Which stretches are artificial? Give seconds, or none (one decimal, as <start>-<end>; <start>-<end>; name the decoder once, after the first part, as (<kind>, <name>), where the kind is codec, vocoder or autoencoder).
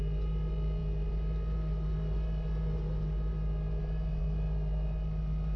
none